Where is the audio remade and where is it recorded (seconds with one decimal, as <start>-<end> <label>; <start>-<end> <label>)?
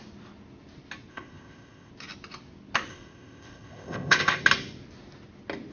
0.0-1.1 recorded; 1.1-1.9 remade; 1.9-2.9 recorded; 2.9-4.4 remade; 4.4-5.7 recorded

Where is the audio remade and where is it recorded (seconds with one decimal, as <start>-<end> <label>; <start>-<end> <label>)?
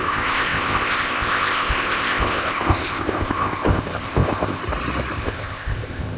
0.0-4.6 remade; 4.6-5.2 recorded; 5.2-6.2 remade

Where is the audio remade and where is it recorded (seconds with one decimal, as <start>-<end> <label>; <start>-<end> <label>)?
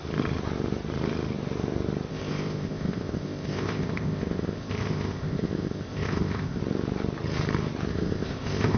0.0-2.1 recorded; 2.1-6.6 remade; 6.6-7.9 recorded; 7.9-8.8 remade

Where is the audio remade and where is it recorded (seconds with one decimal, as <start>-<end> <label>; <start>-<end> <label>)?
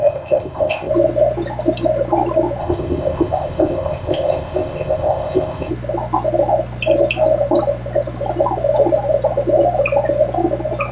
0.0-0.9 remade; 0.9-2.6 recorded; 2.6-5.7 remade; 5.7-10.9 recorded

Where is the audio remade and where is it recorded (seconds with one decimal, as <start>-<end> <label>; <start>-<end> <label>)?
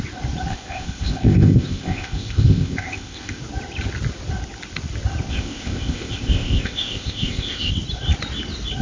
0.0-0.5 recorded; 0.5-3.4 remade; 3.4-5.3 recorded; 5.3-7.7 remade; 7.7-8.8 recorded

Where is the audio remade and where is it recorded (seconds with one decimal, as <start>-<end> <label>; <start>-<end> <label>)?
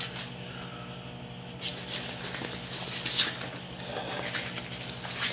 0.0-5.3 recorded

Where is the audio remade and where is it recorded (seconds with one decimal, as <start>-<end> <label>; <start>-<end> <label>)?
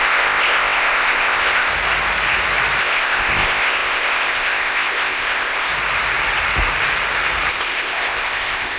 0.0-1.7 remade; 1.7-2.8 recorded; 2.8-5.7 remade; 5.7-7.5 recorded; 7.5-8.8 remade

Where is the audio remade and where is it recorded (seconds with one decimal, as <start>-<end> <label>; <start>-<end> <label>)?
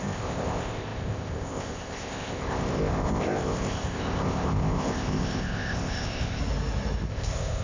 0.0-6.4 remade; 6.4-7.1 recorded; 7.1-7.6 remade